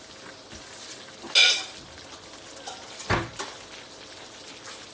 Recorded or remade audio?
recorded